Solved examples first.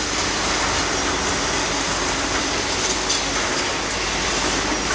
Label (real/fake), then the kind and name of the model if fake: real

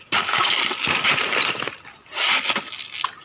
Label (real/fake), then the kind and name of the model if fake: real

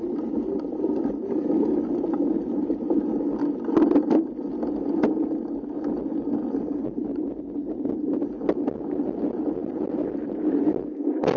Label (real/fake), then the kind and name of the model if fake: real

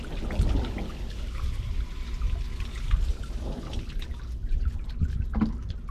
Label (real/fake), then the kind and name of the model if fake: real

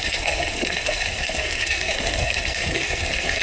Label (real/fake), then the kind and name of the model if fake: fake, codec, SNAC